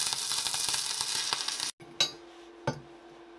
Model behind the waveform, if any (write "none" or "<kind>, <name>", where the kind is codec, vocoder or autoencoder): none